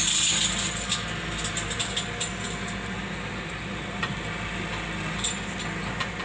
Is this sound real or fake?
real